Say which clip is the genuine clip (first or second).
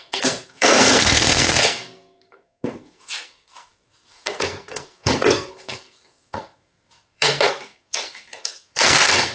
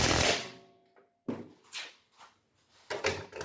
second